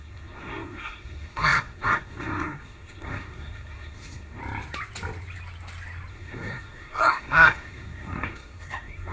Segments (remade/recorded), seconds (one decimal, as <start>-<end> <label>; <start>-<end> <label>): 0.0-4.4 remade; 4.4-6.1 recorded; 6.1-9.1 remade